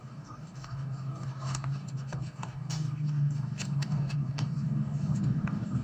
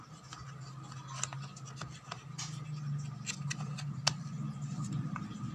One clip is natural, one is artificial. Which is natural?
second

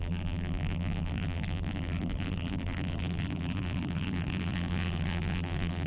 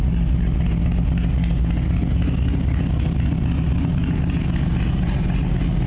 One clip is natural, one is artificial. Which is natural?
second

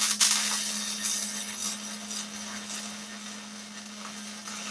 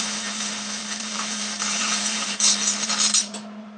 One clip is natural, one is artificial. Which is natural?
first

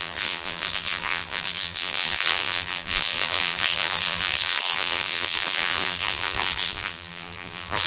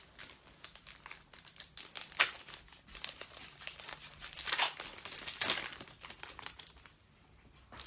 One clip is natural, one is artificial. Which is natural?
second